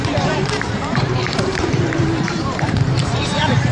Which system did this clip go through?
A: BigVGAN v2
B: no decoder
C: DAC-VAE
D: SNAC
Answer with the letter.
A